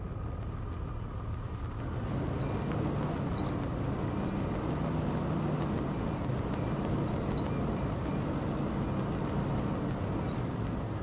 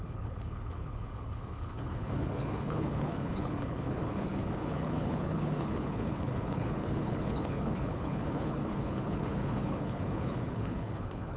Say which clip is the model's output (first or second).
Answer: second